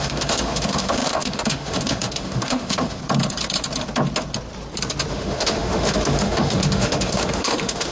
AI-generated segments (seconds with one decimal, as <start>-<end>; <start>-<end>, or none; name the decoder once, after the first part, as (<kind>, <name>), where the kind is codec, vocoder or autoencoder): 0.0-3.0 (autoencoder, DAC-VAE); 5.1-7.9